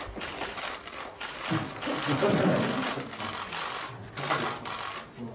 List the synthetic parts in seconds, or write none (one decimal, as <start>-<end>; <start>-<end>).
none